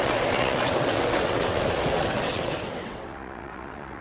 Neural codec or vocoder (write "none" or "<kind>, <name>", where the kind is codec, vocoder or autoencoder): vocoder, WaveNeXt